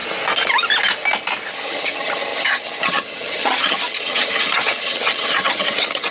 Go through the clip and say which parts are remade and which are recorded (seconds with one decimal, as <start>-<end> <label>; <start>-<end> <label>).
0.0-1.5 recorded; 1.5-6.1 remade